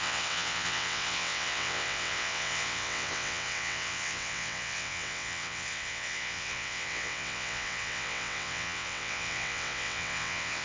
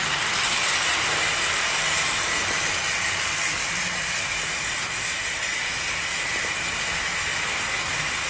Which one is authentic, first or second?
second